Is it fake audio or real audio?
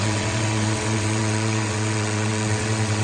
fake